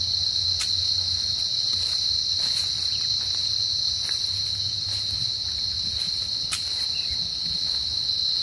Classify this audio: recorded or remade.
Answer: recorded